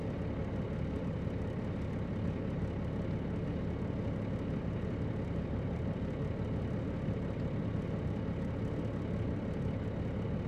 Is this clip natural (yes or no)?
yes